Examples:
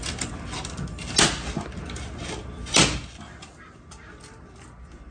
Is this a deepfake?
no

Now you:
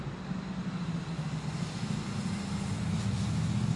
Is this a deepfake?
no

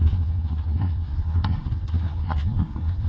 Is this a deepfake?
yes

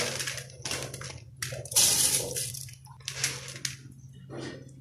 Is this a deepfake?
no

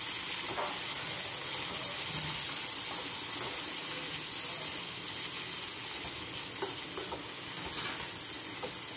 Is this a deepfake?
no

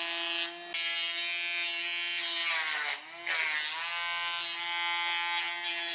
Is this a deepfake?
no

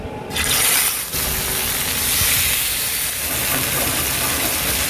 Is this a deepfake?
no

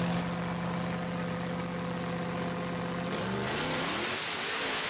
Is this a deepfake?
no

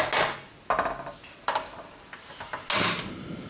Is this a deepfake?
no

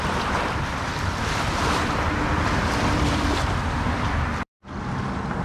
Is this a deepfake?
yes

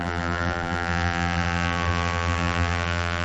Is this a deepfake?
yes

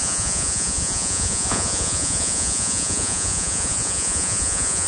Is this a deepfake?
yes